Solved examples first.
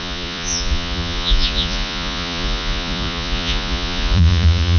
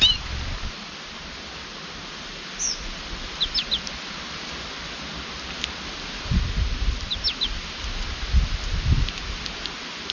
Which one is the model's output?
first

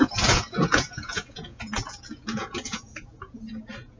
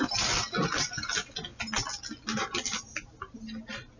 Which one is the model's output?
first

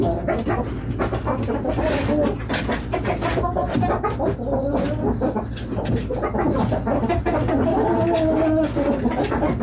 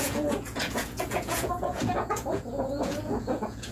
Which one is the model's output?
second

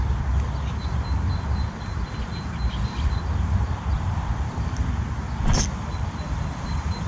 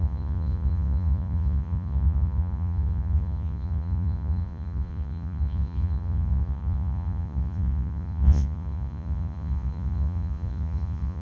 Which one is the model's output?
second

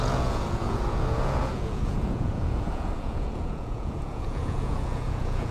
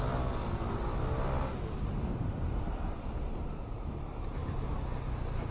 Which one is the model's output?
first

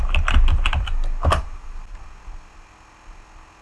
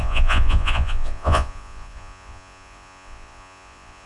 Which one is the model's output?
second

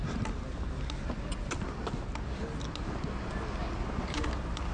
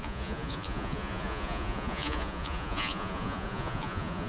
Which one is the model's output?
second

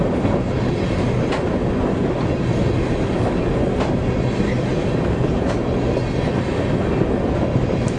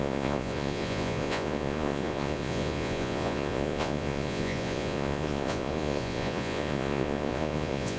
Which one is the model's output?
second